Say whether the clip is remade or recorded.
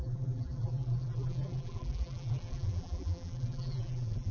remade